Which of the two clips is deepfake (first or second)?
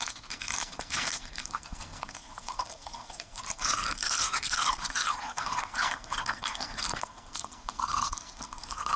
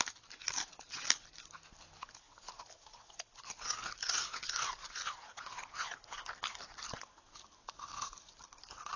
first